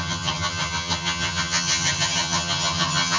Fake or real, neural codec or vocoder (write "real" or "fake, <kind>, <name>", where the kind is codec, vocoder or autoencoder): fake, vocoder, HiFi-GAN